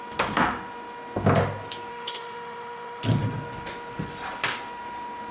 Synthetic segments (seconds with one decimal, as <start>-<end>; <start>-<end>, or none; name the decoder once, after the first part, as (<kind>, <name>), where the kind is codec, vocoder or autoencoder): 1.9-3.0 (autoencoder, DAC-VAE)